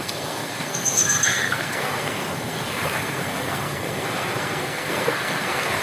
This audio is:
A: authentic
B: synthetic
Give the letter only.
B